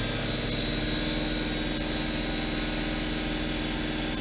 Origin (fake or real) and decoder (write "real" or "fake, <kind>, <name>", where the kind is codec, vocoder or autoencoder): real